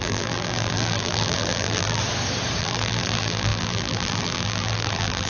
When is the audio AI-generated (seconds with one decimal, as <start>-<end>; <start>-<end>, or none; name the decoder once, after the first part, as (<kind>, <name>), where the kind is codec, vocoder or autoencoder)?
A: 0.0-2.0 (vocoder, BigVGAN v2); 2.6-5.3